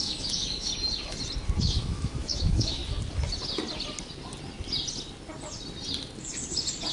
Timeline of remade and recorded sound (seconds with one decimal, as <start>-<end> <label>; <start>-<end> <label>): 0.0-0.7 remade; 0.7-1.6 recorded; 1.6-2.8 remade; 2.8-6.9 recorded